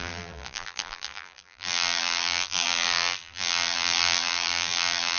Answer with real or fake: fake